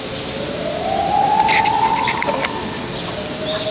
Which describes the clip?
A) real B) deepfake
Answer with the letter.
A